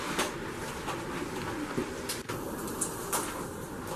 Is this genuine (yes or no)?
yes